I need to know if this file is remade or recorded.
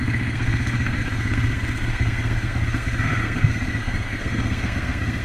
remade